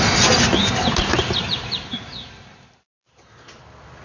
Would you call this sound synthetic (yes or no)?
no